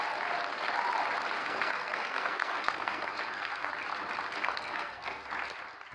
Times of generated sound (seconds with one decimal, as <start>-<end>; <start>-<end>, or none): 1.4-3.7; 4.4-5.3